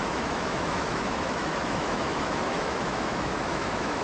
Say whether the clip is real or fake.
fake